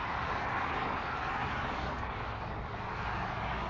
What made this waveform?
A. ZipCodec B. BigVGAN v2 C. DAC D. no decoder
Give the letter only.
C